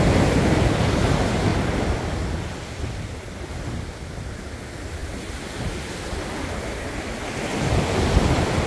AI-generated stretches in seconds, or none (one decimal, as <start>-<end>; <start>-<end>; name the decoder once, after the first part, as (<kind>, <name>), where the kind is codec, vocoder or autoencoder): none